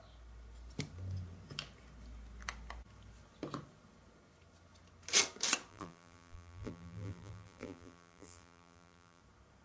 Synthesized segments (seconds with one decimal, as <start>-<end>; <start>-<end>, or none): 5.7-9.2